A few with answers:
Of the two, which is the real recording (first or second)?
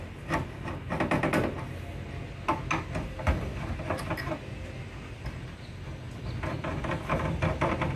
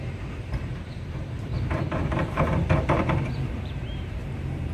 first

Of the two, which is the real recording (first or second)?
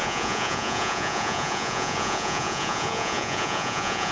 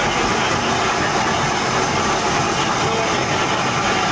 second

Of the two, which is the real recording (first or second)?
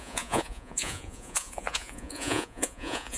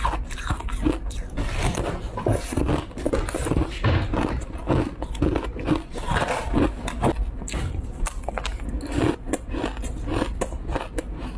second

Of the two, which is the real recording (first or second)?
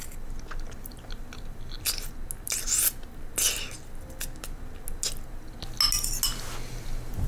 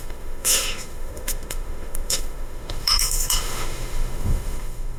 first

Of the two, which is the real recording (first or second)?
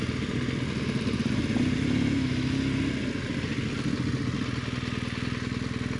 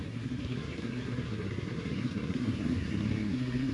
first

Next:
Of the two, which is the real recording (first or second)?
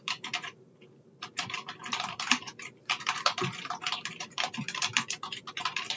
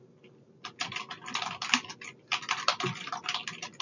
second